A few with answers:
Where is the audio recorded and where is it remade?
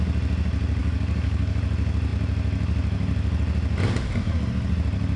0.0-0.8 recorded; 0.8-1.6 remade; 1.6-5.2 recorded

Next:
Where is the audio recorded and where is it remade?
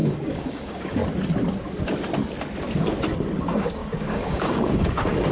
0.0-1.0 remade; 1.0-3.4 recorded; 3.4-5.3 remade